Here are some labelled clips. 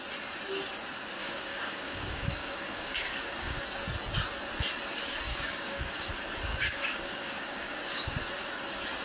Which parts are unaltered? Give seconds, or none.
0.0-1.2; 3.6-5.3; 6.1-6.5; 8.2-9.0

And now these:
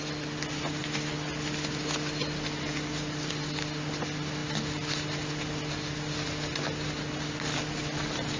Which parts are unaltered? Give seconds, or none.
0.0-8.4